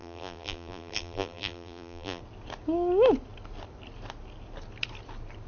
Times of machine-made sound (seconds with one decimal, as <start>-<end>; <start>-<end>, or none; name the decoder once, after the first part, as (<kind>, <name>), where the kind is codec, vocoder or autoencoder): 0.0-2.2 (vocoder, BigVGAN v2)